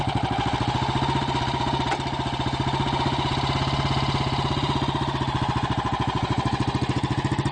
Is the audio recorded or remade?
recorded